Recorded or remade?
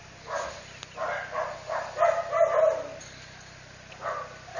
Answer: recorded